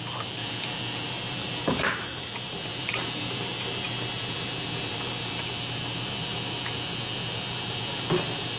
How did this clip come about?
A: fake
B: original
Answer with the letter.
A